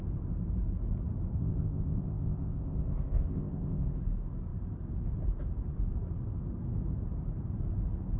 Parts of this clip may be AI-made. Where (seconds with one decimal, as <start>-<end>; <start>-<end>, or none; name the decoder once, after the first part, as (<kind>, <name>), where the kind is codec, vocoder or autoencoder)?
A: 1.4-4.0 (codec, ZipCodec)